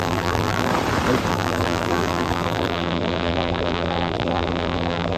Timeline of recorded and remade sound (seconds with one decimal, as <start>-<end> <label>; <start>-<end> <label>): 0.0-0.7 remade; 0.7-1.3 recorded; 1.3-5.2 remade